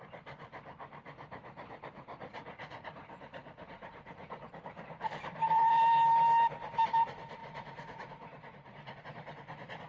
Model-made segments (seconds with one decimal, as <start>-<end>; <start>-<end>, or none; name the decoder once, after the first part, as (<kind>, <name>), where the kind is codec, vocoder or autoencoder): 2.3-4.5 (vocoder, Vocos); 7.4-9.0